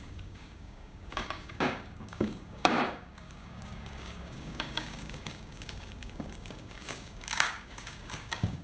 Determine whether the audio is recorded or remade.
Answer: remade